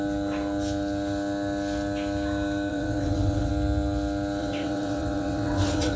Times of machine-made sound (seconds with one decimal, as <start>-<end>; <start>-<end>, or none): 2.7-3.5; 4.4-6.0